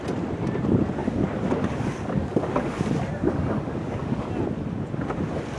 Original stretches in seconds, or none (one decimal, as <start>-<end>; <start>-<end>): 0.0-1.0; 2.8-3.2; 4.3-5.6